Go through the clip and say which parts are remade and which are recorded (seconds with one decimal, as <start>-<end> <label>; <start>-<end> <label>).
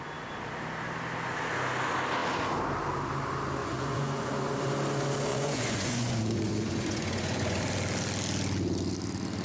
0.0-3.6 recorded; 3.6-4.3 remade; 4.3-5.3 recorded; 5.3-7.6 remade; 7.6-9.4 recorded